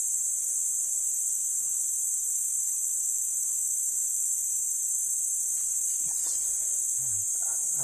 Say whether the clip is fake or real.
real